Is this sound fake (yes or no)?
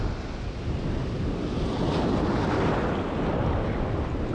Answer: no